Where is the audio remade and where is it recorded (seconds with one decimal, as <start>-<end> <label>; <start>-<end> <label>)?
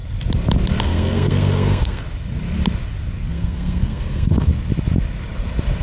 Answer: 0.0-0.8 recorded; 0.8-2.0 remade; 2.0-3.3 recorded; 3.3-4.5 remade; 4.5-5.8 recorded